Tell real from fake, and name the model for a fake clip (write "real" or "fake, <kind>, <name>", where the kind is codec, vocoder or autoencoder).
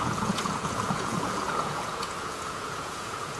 fake, vocoder, Vocos